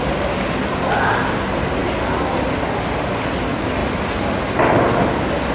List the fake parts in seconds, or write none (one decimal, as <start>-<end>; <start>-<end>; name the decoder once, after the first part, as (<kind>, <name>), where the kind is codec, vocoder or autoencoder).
none